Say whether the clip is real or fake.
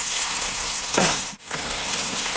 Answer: fake